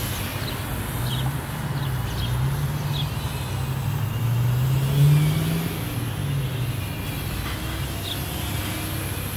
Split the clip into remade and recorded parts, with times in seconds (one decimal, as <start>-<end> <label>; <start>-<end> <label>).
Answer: 0.0-9.4 recorded